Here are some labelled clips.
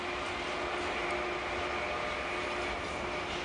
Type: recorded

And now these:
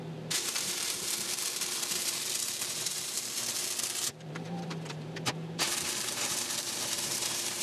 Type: remade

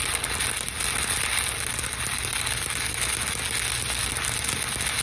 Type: recorded